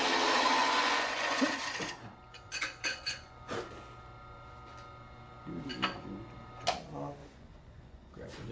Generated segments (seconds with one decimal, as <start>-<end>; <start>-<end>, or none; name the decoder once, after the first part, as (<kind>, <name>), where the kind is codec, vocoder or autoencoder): 0.6-1.4 (vocoder, Vocos); 2.3-3.6; 7.2-8.5